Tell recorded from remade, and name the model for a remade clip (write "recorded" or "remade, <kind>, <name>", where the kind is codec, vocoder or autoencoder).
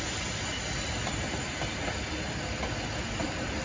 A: recorded